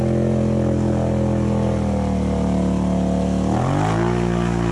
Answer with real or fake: real